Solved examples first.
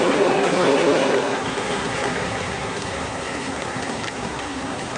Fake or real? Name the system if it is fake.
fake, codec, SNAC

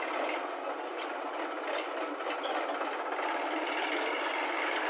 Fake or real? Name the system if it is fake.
real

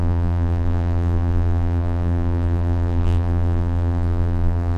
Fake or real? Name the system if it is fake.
fake, vocoder, BigVGAN v2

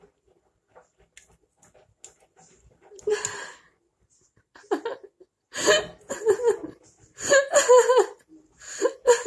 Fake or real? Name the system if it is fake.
real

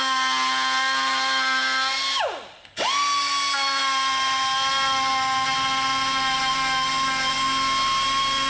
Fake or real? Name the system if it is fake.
real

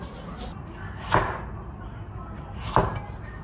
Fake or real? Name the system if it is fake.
real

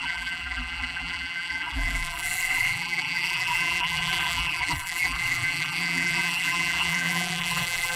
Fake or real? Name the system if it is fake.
fake, vocoder, BigVGAN v2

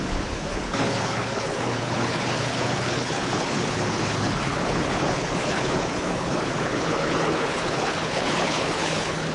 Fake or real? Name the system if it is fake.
fake, codec, HILCodec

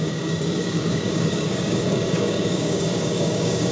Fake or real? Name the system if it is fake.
fake, codec, DAC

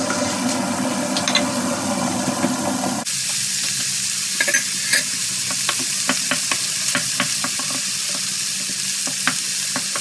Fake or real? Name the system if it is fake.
real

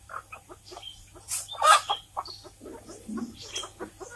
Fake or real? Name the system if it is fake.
real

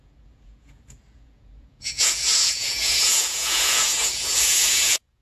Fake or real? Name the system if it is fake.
fake, vocoder, Vocos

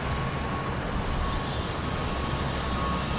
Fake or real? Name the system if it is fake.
real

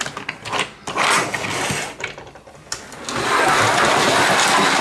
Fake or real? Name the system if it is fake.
real